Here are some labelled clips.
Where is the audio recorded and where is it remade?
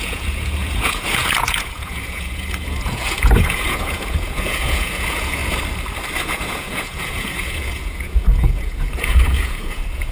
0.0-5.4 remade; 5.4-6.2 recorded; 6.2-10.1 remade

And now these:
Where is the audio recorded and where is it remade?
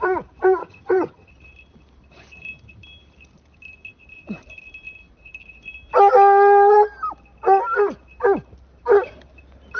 0.0-0.6 recorded; 0.6-1.3 remade; 1.3-9.8 recorded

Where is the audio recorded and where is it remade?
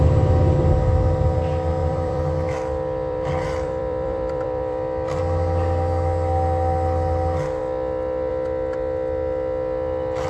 0.0-1.8 recorded; 1.8-5.2 remade; 5.2-10.3 recorded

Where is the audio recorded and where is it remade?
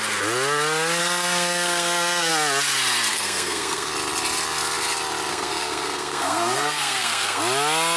0.0-1.0 recorded; 1.0-2.3 remade; 2.3-3.1 recorded; 3.1-3.9 remade; 3.9-5.3 recorded; 5.3-7.4 remade; 7.4-8.0 recorded